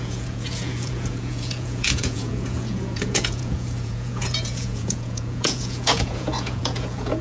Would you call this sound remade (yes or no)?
yes